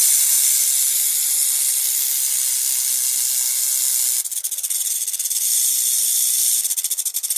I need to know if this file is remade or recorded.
recorded